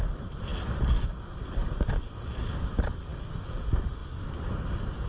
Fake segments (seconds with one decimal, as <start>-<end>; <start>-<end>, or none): 4.0-5.1